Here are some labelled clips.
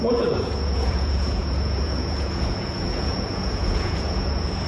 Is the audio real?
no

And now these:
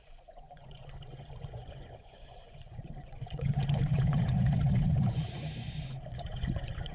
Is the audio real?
no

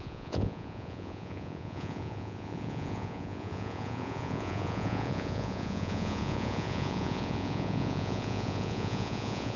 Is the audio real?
no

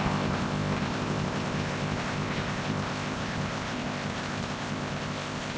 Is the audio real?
no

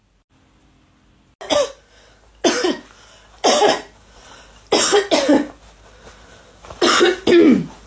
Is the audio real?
yes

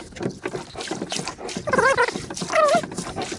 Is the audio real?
yes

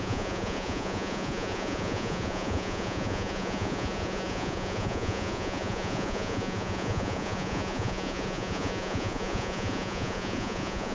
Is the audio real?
no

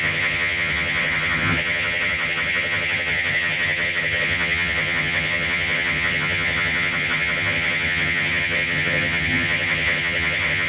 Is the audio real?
no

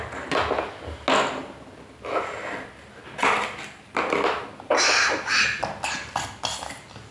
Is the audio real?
yes